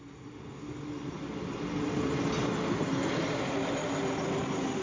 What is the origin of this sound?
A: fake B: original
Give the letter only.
B